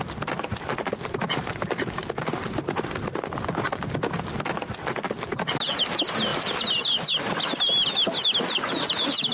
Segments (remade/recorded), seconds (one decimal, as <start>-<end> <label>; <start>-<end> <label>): 0.0-6.3 recorded; 6.3-7.6 remade; 7.6-9.3 recorded